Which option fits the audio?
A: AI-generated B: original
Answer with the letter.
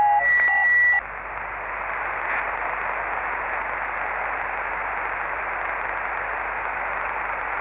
B